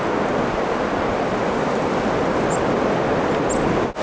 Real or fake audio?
real